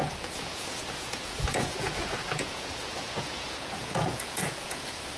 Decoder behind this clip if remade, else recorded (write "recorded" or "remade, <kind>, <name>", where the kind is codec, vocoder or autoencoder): remade, vocoder, Vocos